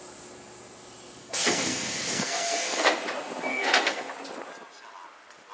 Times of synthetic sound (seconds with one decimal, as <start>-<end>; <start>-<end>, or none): 1.2-3.0; 3.5-4.1